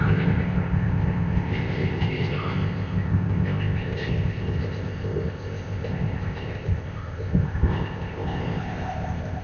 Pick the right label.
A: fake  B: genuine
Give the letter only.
A